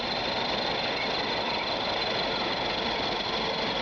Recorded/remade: recorded